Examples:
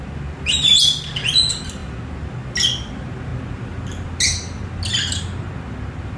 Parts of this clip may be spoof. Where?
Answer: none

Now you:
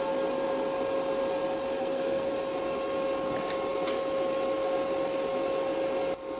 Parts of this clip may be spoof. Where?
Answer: 1.8-2.3 (codec, SNAC)

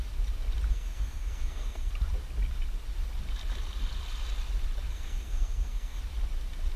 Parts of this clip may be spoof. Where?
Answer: 0.7-1.9 (codec, SNAC); 4.9-6.0

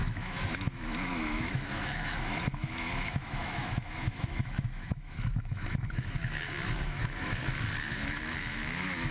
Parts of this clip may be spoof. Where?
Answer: 0.0-9.1 (autoencoder, DAC-VAE)

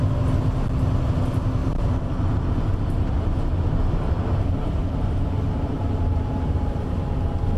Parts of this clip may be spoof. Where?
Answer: 1.6-2.8 (vocoder, BigVGAN v2); 4.8-6.6